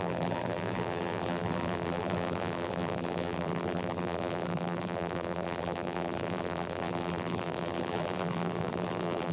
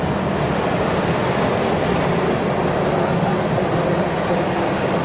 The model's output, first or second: first